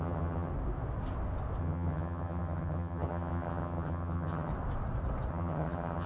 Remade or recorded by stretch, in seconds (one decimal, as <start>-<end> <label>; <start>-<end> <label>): 0.0-0.5 remade; 0.5-1.6 recorded; 1.6-4.5 remade; 4.5-5.3 recorded; 5.3-6.1 remade